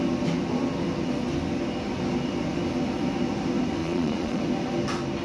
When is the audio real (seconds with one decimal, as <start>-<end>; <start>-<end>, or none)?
0.0-3.8; 4.4-5.2